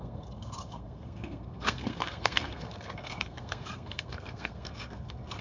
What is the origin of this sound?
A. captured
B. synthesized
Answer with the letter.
B